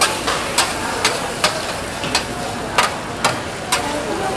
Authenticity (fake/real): real